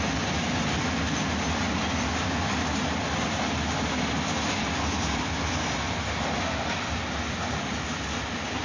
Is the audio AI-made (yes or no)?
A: no